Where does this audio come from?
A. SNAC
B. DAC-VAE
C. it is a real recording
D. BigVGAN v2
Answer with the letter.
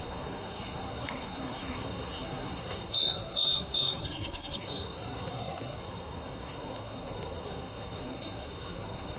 A